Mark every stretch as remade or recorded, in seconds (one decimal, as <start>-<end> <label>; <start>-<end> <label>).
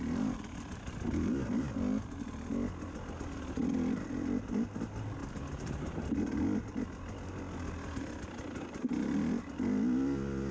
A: 0.0-10.5 recorded